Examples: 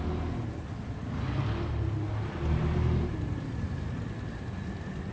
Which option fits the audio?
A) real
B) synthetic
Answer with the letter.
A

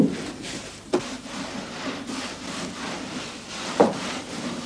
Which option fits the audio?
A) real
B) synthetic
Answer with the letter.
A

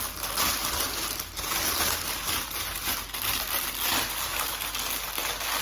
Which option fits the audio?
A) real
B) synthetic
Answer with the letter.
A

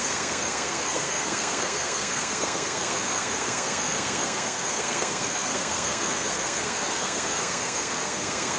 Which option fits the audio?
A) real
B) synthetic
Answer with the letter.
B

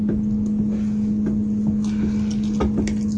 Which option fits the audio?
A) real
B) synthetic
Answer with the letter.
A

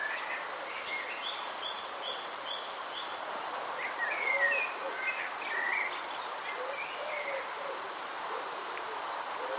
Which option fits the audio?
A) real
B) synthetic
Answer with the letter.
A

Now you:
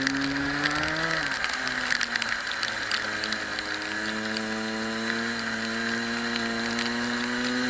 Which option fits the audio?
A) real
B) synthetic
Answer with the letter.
A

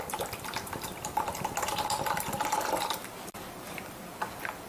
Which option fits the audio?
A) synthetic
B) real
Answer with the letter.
A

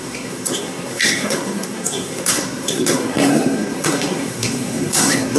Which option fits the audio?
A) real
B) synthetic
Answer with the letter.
B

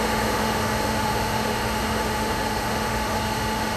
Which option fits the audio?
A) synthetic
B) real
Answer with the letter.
A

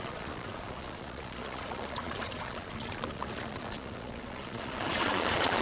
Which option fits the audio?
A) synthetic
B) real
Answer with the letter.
A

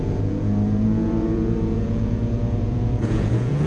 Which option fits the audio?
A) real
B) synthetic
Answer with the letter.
B